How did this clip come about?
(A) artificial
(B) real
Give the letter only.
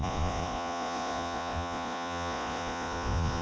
A